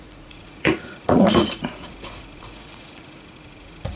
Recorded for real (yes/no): no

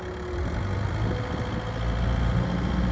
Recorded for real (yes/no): yes